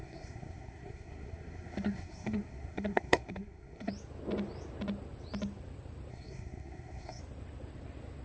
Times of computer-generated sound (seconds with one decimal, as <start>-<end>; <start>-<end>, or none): 0.0-3.9; 6.1-7.2

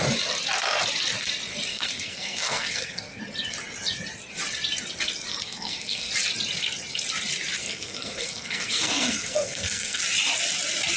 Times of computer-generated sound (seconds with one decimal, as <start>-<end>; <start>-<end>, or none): 1.7-3.2; 5.3-6.1; 7.6-10.0

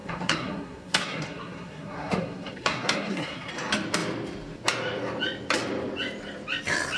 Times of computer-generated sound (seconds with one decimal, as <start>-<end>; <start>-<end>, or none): 0.0-3.5

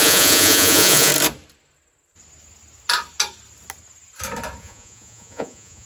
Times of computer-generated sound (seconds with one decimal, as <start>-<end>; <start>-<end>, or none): 0.0-1.1; 4.6-5.9

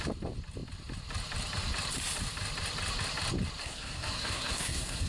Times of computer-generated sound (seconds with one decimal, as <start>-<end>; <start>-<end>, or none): 3.6-5.1